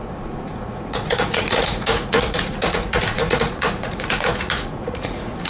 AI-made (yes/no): yes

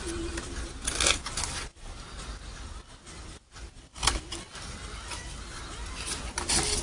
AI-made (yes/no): no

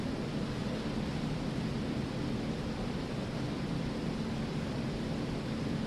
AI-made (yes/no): no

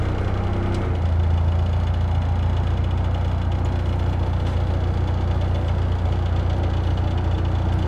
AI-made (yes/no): no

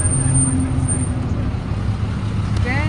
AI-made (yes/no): no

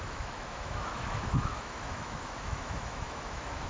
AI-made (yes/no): yes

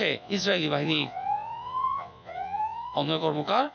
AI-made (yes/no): yes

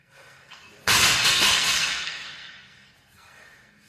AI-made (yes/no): yes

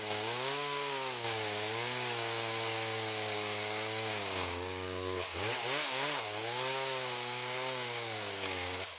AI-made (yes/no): yes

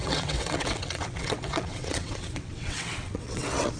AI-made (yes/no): yes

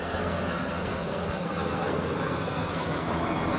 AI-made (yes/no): yes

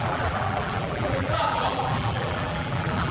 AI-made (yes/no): yes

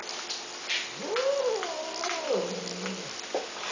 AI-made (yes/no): no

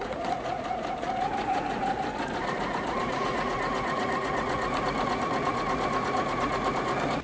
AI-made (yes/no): yes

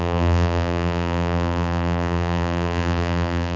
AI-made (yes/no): yes